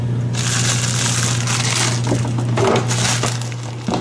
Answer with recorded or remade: recorded